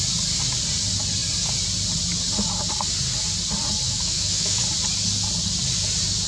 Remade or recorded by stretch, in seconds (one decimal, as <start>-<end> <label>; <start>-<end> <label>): 0.0-3.8 recorded; 3.8-4.6 remade; 4.6-6.3 recorded